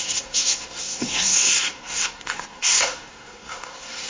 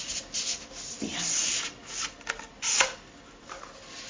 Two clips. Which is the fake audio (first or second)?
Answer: first